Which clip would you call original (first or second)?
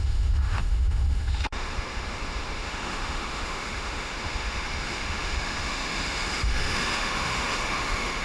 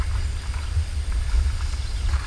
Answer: second